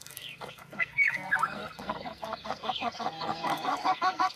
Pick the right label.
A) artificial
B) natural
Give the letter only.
A